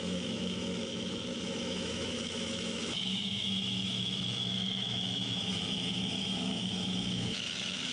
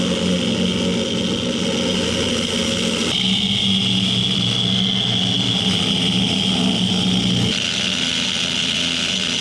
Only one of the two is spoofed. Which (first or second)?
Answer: first